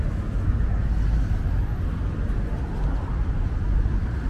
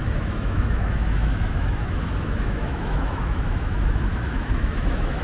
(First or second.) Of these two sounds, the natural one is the first